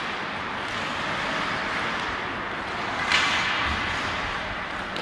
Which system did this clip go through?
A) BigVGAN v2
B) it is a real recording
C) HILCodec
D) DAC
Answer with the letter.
B